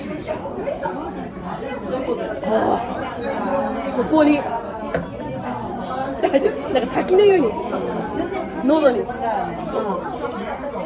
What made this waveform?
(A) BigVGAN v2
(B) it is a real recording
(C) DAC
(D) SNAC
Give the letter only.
A